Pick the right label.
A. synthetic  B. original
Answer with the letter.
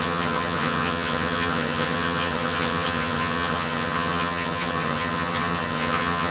A